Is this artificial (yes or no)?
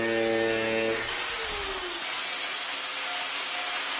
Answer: no